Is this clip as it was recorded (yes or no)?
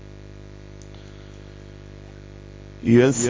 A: yes